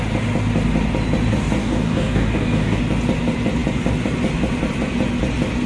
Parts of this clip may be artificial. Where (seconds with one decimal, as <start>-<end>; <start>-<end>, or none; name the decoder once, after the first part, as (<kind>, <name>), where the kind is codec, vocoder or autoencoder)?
1.6-2.8 (codec, DAC)